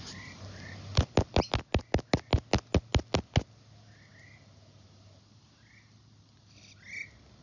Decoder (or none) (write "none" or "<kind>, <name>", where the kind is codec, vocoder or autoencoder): none